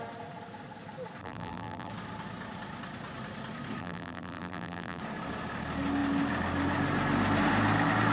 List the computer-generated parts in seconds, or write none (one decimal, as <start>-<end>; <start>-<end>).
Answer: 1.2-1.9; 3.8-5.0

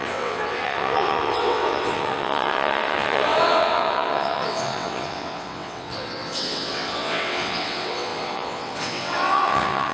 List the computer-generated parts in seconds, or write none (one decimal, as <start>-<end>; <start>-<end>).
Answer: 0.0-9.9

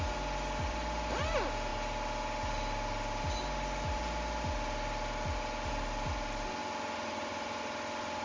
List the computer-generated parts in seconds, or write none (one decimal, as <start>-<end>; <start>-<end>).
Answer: none

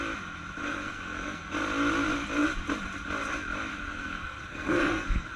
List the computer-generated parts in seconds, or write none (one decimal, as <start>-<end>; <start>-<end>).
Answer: 0.6-1.5; 3.7-5.4

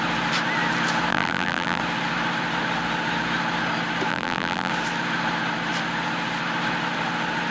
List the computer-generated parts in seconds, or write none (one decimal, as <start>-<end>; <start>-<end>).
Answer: 1.1-1.8; 4.1-4.7